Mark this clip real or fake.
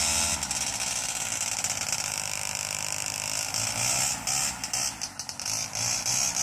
real